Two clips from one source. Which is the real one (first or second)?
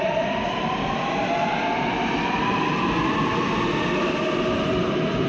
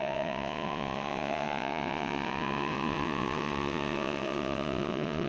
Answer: first